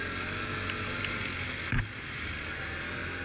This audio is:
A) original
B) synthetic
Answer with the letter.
A